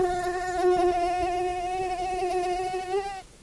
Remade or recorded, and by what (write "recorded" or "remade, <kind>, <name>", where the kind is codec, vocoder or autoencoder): recorded